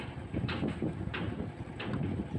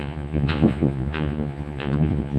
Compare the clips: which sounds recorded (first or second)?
first